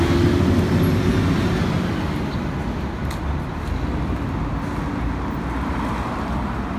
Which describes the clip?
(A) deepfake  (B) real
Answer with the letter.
B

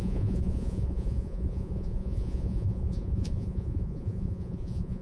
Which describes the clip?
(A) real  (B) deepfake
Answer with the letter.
B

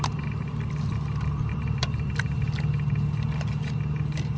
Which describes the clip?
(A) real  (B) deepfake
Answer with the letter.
A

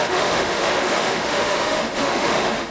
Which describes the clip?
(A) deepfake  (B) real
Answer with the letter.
A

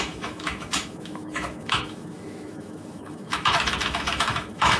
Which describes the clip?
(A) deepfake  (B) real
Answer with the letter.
A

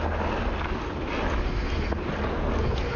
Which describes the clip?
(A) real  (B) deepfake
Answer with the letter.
A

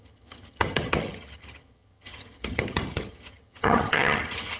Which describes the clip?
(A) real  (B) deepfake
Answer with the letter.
B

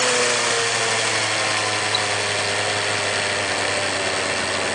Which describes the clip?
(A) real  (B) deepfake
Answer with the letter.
A